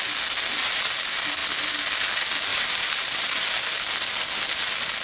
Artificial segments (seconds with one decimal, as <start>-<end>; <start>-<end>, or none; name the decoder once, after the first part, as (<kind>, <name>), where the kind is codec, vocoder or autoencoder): 2.5-3.2 (vocoder, BigVGAN v2)